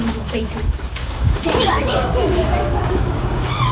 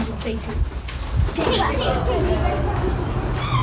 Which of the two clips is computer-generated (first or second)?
first